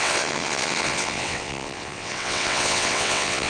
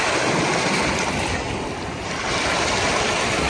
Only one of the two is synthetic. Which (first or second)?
first